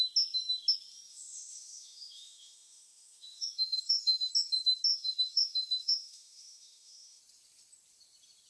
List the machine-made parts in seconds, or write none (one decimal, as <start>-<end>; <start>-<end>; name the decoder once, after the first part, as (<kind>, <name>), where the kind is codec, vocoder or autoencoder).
1.1-4.3 (autoencoder, DAC-VAE); 4.9-7.2